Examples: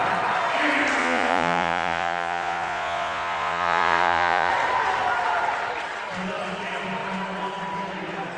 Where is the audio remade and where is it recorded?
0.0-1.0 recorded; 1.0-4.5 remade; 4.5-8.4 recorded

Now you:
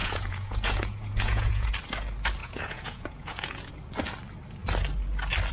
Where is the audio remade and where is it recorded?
0.0-1.7 remade; 1.7-2.4 recorded; 2.4-3.7 remade; 3.7-5.5 recorded

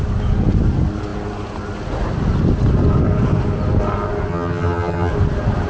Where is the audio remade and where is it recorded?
0.0-4.3 recorded; 4.3-5.1 remade; 5.1-5.7 recorded